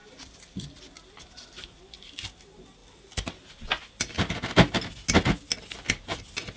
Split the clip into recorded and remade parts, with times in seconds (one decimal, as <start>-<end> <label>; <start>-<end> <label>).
0.0-2.0 remade; 2.0-2.8 recorded; 2.8-4.3 remade; 4.3-6.6 recorded